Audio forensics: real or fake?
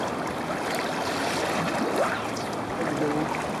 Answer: real